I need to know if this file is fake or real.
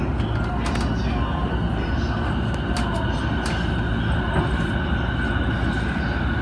real